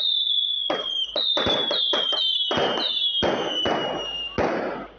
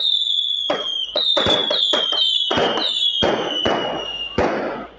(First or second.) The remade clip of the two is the second